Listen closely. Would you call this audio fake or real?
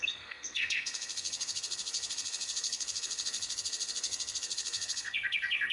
fake